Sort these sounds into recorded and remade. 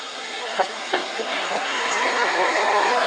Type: remade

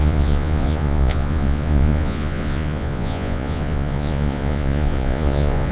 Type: remade